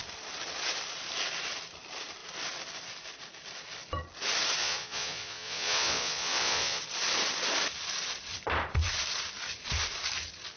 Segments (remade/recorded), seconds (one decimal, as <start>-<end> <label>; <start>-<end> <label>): 0.0-4.6 recorded; 4.6-6.8 remade; 6.8-10.6 recorded